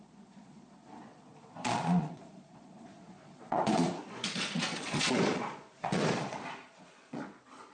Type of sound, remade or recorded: remade